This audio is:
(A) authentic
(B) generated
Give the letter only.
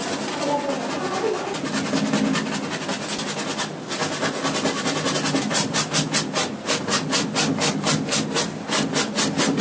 A